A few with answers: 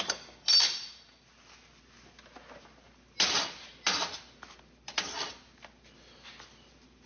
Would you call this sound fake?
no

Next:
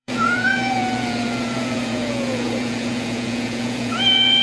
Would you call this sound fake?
yes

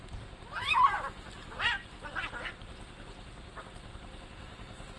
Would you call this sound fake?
no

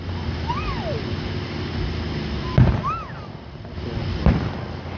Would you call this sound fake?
no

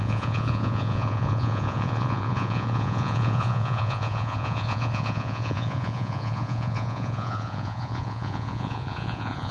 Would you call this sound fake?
yes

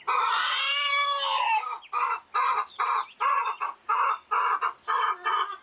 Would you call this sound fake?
no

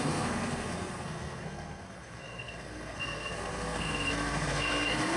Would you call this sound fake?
yes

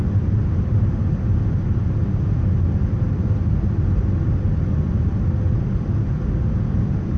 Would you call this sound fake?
no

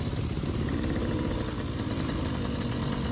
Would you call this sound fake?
no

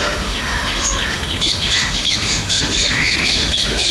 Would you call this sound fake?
yes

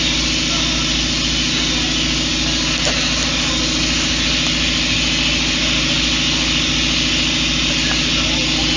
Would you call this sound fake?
no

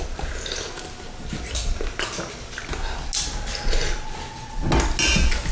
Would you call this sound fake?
no